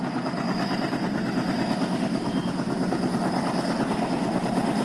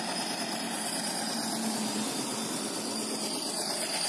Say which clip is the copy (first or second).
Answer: second